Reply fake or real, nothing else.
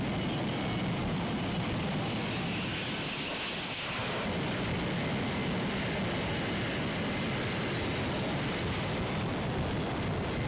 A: real